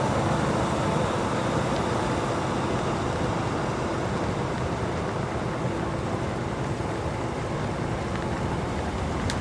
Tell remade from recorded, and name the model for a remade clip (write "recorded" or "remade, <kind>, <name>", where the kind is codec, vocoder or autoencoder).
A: recorded